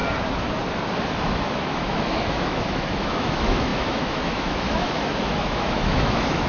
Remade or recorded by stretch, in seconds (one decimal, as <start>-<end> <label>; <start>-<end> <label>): 0.0-1.2 recorded; 1.2-6.5 remade